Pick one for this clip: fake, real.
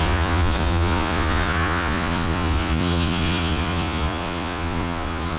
fake